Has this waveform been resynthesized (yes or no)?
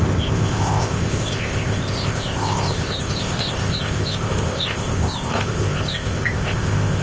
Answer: yes